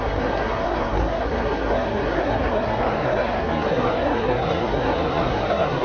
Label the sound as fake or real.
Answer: fake